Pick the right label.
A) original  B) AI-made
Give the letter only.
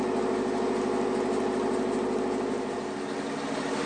A